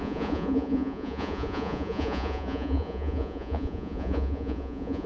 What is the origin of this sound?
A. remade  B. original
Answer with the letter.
A